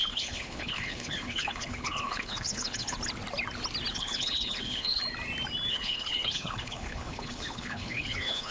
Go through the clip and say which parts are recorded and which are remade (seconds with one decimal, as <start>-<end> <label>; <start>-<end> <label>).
0.0-3.0 remade; 3.0-3.9 recorded; 3.9-5.0 remade; 5.0-5.7 recorded; 5.7-8.5 remade